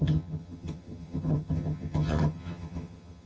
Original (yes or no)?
no